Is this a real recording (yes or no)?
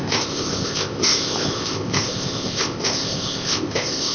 no